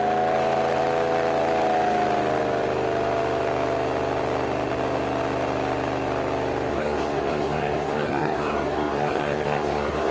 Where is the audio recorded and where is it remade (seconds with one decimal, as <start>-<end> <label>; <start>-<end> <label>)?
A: 0.0-6.7 recorded; 6.7-10.1 remade